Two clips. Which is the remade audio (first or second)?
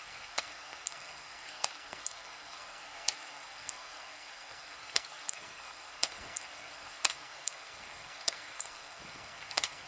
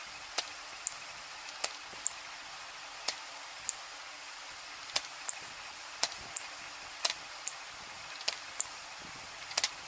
first